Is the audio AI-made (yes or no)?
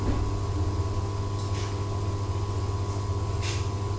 no